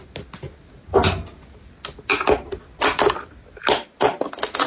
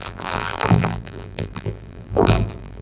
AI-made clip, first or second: second